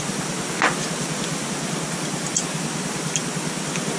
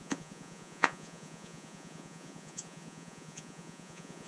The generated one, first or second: second